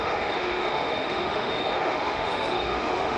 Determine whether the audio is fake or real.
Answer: fake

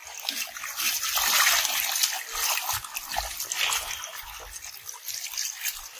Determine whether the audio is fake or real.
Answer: real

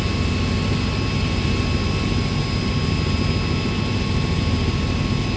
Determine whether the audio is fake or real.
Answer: real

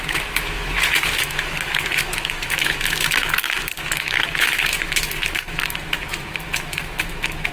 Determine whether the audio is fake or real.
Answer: fake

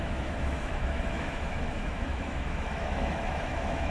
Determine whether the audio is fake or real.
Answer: fake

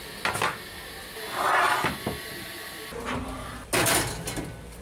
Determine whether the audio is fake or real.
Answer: real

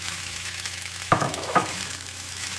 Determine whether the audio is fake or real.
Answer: fake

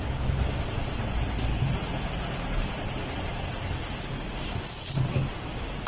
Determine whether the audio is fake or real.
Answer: real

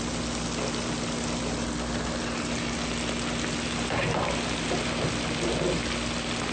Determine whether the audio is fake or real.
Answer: real